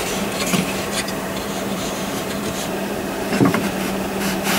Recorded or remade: remade